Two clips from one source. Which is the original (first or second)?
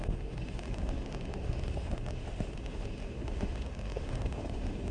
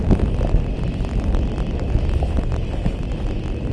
second